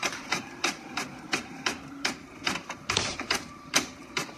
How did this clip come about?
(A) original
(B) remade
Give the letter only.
B